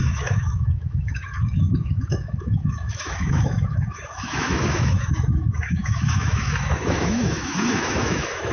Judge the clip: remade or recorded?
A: remade